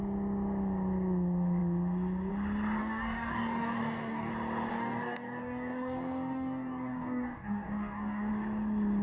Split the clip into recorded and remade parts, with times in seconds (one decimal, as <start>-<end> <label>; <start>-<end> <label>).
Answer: 0.0-2.8 recorded; 2.8-4.3 remade; 4.3-4.7 recorded; 4.7-8.3 remade; 8.3-9.0 recorded